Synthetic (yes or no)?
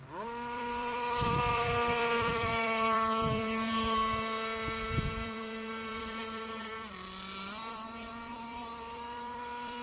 yes